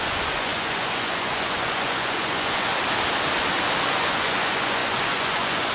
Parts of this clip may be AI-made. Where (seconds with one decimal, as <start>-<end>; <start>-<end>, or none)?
0.0-2.7; 3.9-5.7

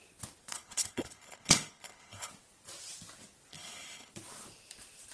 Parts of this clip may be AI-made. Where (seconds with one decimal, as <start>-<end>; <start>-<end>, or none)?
0.5-2.3; 3.5-4.1

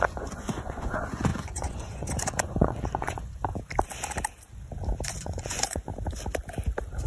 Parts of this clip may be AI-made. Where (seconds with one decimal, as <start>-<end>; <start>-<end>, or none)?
0.0-3.5; 5.2-5.9